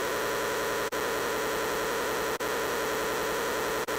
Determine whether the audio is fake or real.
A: real